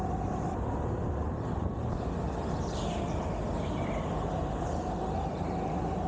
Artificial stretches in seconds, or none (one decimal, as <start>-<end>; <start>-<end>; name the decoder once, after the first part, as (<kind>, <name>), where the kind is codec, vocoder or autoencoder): 4.4-5.3 (vocoder, BigVGAN v2)